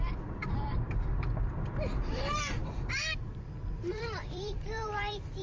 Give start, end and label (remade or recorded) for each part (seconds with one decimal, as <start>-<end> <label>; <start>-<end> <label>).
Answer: 0.0-5.4 remade